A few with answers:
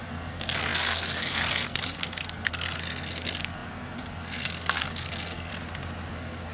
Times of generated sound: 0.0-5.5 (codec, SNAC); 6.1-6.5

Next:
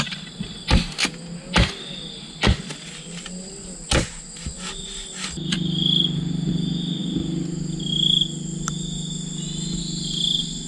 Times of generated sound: none

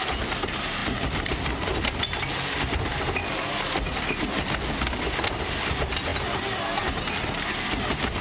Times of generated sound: none

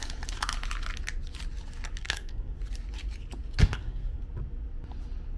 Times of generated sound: 2.0-2.6 (codec, SNAC); 3.6-4.2